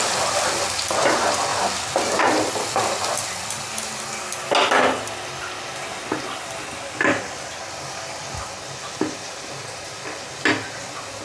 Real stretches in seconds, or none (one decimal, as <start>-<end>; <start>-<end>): 0.0-1.5; 2.2-11.2